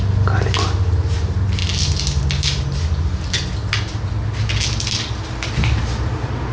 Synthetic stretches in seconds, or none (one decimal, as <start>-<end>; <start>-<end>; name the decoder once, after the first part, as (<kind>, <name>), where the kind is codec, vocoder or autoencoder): none